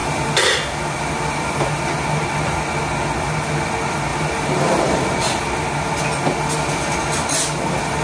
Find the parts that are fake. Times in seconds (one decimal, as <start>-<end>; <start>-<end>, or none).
4.1-5.4